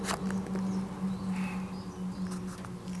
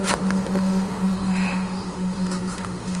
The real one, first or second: first